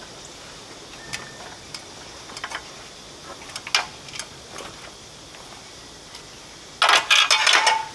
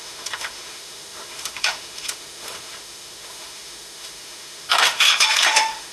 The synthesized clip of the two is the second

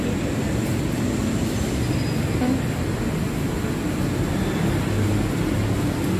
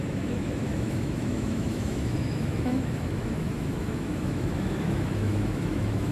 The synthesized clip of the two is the second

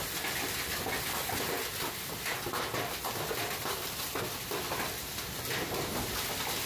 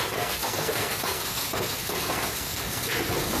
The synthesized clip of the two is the second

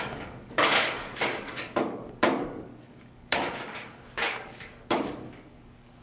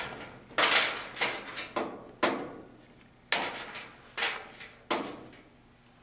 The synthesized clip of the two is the first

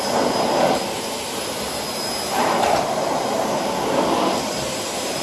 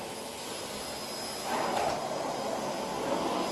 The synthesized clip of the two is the first